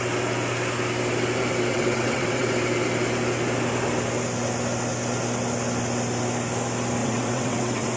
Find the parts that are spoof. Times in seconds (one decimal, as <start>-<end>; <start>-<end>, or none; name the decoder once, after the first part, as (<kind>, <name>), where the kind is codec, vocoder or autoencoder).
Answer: 1.7-2.5 (vocoder, WaveNeXt); 7.0-8.0

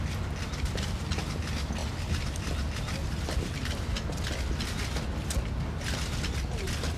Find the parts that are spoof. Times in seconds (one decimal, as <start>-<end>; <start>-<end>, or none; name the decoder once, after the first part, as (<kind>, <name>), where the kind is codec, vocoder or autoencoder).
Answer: none

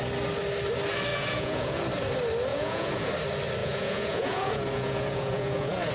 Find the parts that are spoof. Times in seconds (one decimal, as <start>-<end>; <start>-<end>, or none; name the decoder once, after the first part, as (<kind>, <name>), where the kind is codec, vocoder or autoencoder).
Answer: 1.1-1.8 (vocoder, Vocos); 2.5-3.1; 3.6-5.9